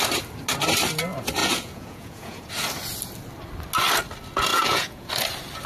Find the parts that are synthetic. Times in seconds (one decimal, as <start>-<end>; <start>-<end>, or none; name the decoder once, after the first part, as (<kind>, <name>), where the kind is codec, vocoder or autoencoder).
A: 1.4-2.5 (vocoder, Vocos); 4.5-5.1